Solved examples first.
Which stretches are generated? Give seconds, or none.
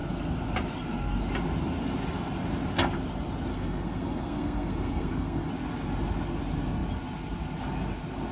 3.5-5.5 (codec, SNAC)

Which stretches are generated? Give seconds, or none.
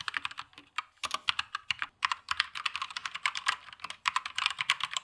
none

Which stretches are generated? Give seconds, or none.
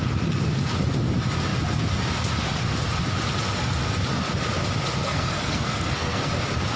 5.0-6.3 (codec, SNAC)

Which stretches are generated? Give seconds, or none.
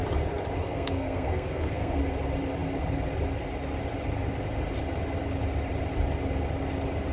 0.6-2.0 (codec, SNAC)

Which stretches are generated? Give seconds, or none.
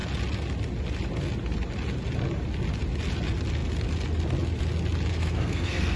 5.1-6.0 (codec, SNAC)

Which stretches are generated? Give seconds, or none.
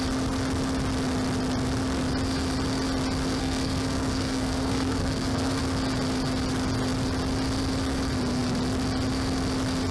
3.4-5.6 (codec, SNAC)